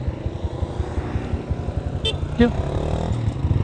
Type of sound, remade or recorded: recorded